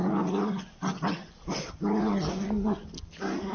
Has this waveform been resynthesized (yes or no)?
no